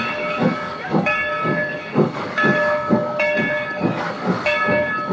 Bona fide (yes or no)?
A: no